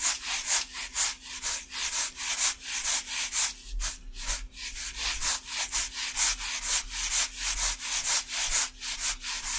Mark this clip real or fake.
real